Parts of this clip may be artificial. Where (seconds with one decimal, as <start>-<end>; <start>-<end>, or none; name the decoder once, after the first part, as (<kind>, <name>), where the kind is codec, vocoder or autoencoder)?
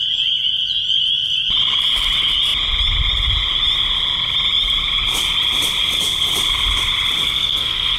7.2-8.0 (codec, SNAC)